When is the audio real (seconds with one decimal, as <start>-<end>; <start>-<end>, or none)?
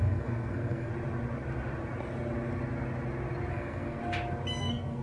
0.9-3.5; 4.0-4.6